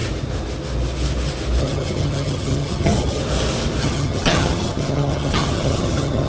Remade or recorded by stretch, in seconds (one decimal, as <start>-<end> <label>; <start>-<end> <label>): 0.0-1.6 recorded; 1.6-3.2 remade; 3.2-3.8 recorded; 3.8-6.3 remade